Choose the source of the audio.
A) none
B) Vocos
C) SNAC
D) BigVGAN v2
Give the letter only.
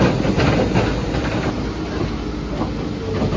A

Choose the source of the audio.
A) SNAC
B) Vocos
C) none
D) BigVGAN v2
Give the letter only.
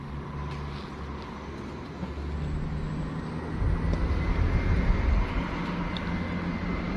C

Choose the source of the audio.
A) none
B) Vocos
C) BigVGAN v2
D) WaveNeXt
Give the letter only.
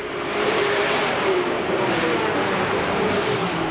C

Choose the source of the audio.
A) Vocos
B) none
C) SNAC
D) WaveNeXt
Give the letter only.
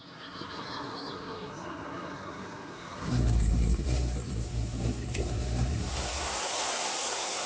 C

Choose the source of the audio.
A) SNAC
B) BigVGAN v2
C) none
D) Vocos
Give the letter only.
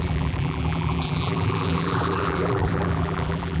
B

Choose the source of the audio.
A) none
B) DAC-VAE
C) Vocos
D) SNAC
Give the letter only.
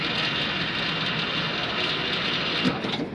A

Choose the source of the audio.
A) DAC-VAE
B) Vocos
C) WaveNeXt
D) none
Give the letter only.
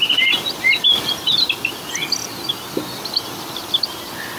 D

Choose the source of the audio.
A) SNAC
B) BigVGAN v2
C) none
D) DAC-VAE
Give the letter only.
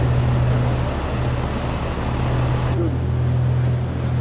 C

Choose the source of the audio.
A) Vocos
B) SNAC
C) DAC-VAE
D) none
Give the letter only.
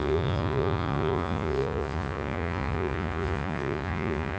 A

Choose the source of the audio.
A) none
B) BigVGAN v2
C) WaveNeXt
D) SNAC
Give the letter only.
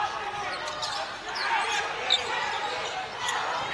A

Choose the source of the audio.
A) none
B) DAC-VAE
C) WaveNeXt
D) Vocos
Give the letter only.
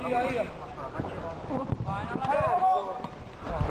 A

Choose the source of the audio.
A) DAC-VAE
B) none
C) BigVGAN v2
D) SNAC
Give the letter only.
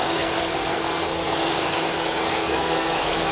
D